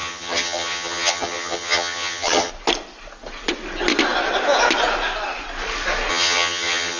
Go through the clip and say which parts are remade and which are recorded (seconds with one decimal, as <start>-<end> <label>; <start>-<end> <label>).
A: 0.0-2.5 remade; 2.5-6.1 recorded; 6.1-7.0 remade